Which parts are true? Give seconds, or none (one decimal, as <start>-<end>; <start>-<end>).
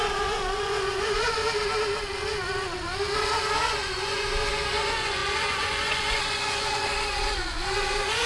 1.4-3.7